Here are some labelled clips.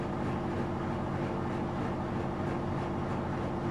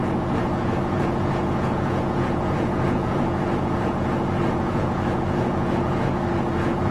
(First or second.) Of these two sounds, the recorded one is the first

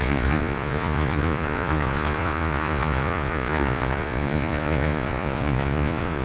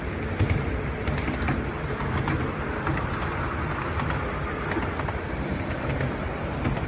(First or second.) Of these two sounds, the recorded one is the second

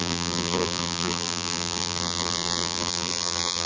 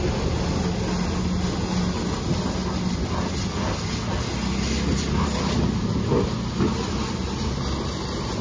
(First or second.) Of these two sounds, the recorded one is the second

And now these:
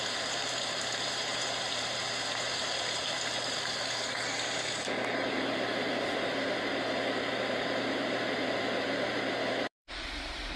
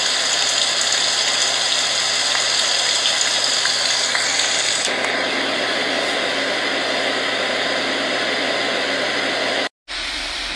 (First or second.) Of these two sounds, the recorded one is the second